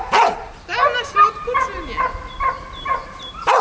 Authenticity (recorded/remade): recorded